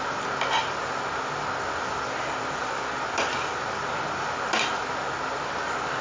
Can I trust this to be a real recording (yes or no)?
yes